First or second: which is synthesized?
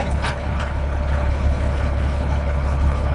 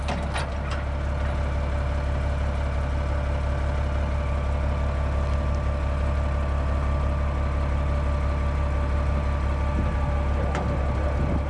first